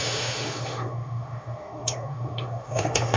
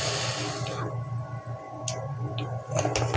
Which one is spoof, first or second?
first